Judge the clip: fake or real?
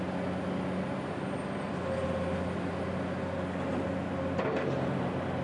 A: real